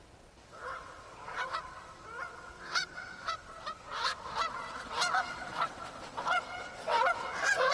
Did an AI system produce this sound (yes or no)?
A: yes